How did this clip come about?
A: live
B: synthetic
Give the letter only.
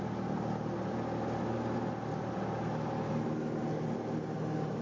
A